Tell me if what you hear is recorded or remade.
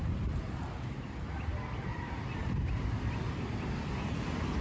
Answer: recorded